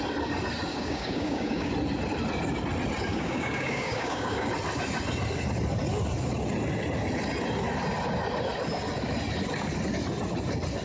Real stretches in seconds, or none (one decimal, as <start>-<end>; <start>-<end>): 0.0-0.7; 1.7-3.1; 4.5-10.8